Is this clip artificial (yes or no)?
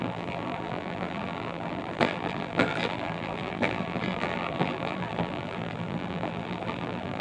yes